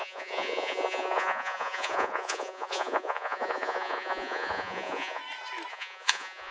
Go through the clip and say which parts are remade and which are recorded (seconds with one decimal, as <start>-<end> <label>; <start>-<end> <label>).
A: 0.0-5.2 remade; 5.2-5.7 recorded; 5.7-6.5 remade